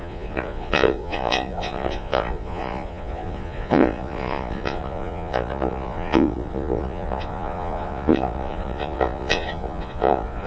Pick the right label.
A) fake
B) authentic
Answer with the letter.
A